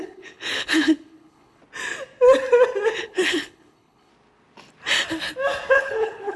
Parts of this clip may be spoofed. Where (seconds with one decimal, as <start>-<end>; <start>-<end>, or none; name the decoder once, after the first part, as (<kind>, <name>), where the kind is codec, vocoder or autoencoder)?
0.0-1.6 (codec, HILCodec); 3.0-4.1; 5.7-6.4